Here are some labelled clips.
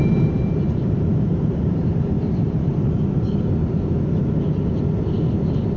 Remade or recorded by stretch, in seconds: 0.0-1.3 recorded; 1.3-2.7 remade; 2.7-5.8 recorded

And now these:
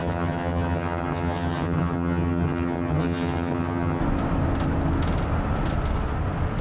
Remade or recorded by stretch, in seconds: 0.0-4.0 remade; 4.0-6.6 recorded

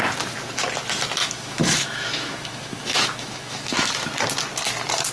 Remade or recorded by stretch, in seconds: 0.0-1.2 recorded; 1.2-3.9 remade; 3.9-5.1 recorded

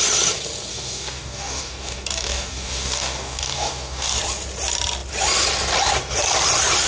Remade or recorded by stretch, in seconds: 0.0-0.7 recorded; 0.7-4.2 remade; 4.2-6.9 recorded

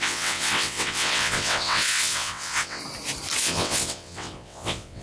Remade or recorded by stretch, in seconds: 0.0-2.8 remade; 2.8-3.4 recorded; 3.4-5.0 remade

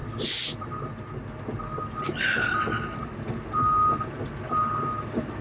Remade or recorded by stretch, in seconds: 0.0-5.4 recorded

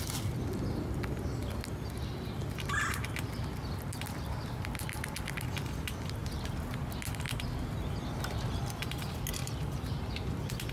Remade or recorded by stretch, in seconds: 0.0-1.4 recorded; 1.4-3.9 remade; 3.9-9.4 recorded; 9.4-9.9 remade; 9.9-10.7 recorded